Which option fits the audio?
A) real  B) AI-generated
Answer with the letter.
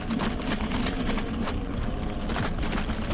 A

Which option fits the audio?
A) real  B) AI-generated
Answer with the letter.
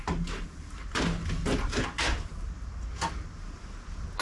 A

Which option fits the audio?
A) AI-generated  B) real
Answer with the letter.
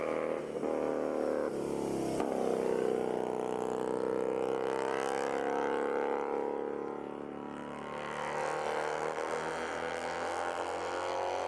B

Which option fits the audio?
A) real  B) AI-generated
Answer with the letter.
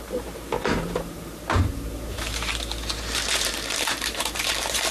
B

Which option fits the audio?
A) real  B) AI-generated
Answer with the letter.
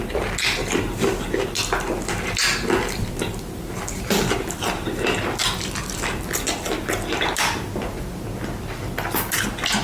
A